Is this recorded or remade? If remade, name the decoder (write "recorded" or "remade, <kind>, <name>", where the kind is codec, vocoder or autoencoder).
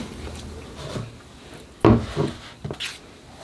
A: recorded